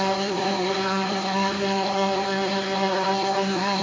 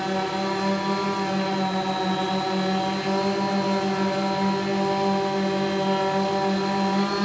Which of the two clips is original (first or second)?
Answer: second